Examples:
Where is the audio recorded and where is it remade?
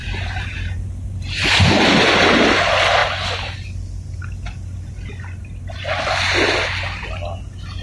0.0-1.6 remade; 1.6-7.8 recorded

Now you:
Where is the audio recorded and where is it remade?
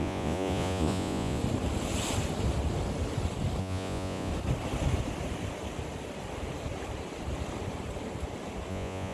0.0-1.4 remade; 1.4-3.6 recorded; 3.6-4.3 remade; 4.3-8.7 recorded; 8.7-9.1 remade